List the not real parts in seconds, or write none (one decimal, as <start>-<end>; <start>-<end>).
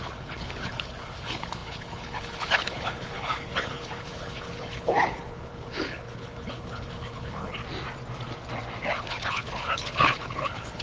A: 0.0-7.6; 8.9-10.8